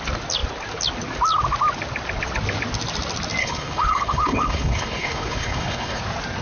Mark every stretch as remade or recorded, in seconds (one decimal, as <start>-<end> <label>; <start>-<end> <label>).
0.0-3.4 recorded; 3.4-6.0 remade; 6.0-6.4 recorded